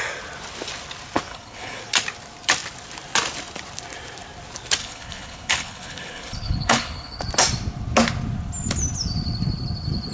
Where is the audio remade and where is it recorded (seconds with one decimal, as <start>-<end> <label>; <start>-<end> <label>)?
0.0-1.3 recorded; 1.3-1.8 remade; 1.8-4.8 recorded; 4.8-7.2 remade; 7.2-10.1 recorded